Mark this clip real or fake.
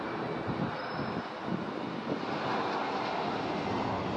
real